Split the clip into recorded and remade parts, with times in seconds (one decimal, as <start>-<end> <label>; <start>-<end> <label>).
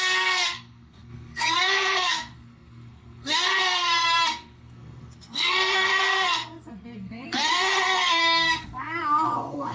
0.0-9.7 remade